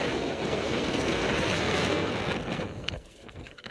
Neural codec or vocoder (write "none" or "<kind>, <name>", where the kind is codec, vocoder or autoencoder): codec, SNAC